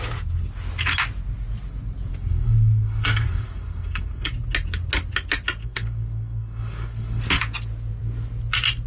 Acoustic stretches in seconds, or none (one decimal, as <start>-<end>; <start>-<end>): 0.0-2.1; 4.3-5.6; 7.2-8.9